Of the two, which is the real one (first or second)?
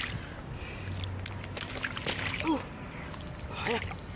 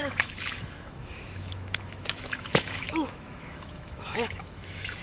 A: first